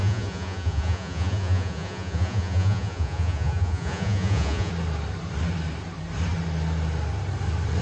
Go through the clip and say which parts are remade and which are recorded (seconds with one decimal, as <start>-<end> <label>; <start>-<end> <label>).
0.0-4.7 remade; 4.7-7.8 recorded